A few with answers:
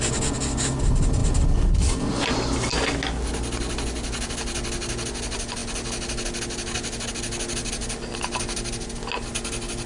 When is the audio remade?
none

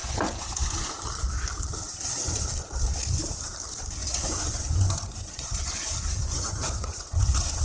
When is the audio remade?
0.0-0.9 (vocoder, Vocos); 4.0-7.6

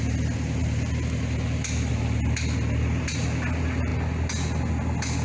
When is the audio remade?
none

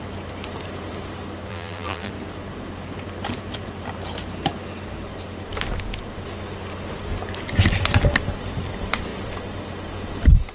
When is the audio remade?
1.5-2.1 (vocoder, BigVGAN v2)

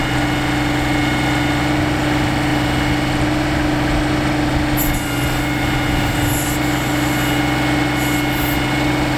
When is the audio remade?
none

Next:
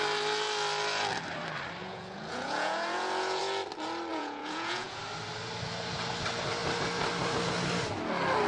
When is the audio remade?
1.8-3.4 (vocoder, Vocos); 4.1-5.0

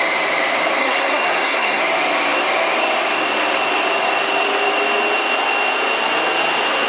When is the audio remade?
0.8-1.8 (codec, SNAC)

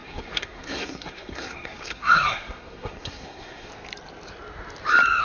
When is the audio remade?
0.0-3.7 (codec, SNAC)